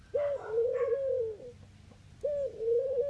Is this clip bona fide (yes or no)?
yes